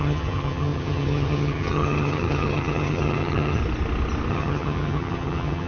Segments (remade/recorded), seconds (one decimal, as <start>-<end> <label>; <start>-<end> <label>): 0.0-3.6 remade; 3.6-4.3 recorded; 4.3-5.7 remade